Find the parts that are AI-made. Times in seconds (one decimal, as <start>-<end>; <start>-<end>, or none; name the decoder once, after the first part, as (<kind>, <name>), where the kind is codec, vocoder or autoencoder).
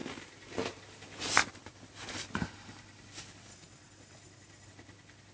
3.5-4.7 (vocoder, BigVGAN v2)